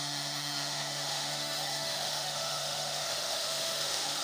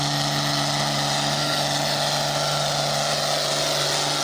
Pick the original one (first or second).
second